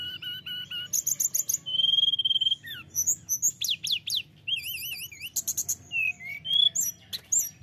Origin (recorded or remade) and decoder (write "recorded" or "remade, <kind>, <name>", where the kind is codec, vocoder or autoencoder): recorded